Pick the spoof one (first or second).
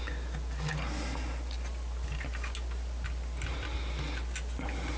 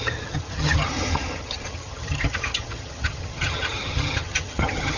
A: second